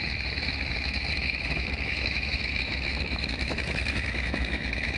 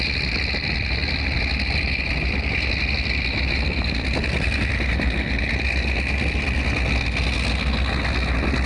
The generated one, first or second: first